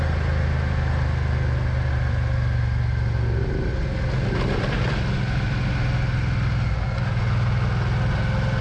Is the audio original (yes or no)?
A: yes